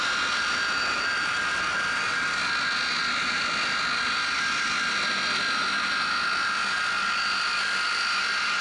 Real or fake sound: real